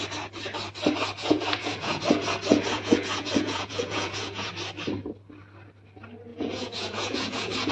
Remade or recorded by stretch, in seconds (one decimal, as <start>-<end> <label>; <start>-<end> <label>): 0.0-1.2 recorded; 1.2-2.0 remade; 2.0-2.5 recorded; 2.5-4.5 remade; 4.5-6.3 recorded; 6.3-7.7 remade